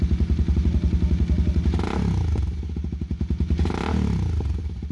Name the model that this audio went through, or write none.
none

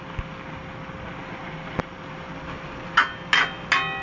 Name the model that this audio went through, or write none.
none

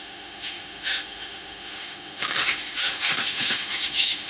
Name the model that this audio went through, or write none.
autoencoder, DAC-VAE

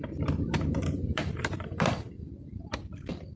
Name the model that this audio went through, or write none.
vocoder, BigVGAN v2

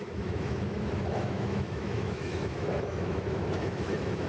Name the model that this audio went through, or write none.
autoencoder, DAC-VAE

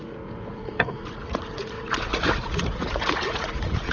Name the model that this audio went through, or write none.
vocoder, Vocos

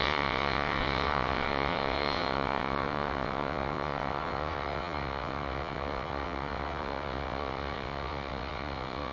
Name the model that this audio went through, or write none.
vocoder, WaveNeXt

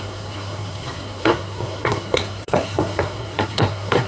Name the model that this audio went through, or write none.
codec, SNAC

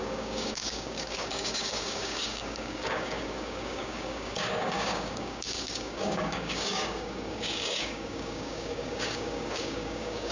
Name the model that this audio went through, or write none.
codec, DAC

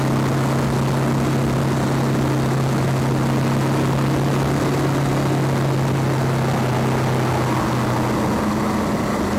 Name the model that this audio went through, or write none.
none